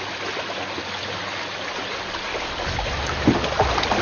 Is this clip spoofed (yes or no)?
no